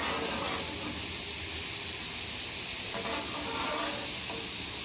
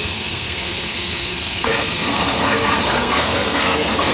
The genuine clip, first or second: first